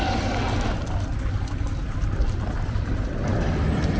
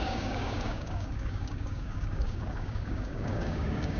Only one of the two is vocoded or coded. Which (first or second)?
second